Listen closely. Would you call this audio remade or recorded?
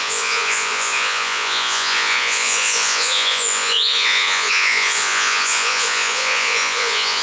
remade